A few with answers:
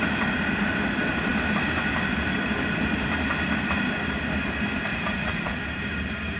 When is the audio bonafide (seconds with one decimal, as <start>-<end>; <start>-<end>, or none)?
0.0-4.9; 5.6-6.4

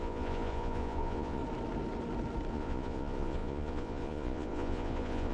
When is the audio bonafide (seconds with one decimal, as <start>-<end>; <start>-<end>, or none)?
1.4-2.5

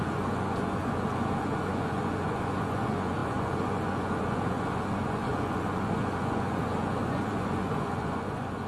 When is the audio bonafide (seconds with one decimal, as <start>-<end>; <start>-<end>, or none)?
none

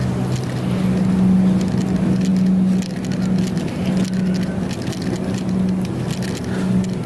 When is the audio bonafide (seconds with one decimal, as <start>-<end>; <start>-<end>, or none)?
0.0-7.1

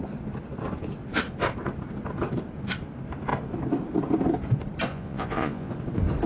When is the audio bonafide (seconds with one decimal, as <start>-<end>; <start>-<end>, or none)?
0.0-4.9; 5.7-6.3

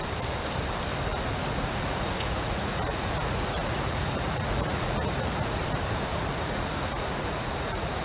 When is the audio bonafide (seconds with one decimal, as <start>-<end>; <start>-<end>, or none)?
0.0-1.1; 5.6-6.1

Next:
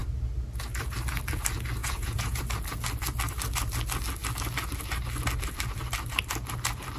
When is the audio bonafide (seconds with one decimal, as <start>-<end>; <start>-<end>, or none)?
0.0-1.8; 2.4-7.0